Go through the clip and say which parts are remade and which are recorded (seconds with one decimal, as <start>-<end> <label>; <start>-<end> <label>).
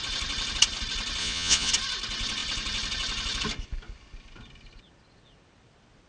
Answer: 0.0-1.2 recorded; 1.2-1.7 remade; 1.7-6.1 recorded